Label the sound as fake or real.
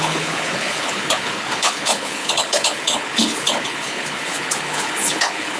fake